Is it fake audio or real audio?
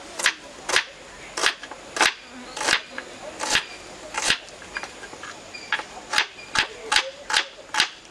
real